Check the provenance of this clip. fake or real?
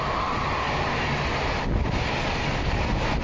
real